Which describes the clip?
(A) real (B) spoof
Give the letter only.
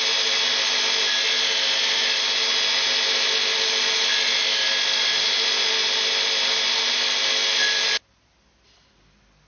A